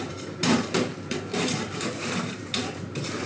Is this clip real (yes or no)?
no